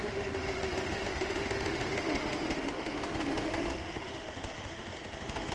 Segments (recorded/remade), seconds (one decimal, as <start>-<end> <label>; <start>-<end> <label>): 0.0-5.5 remade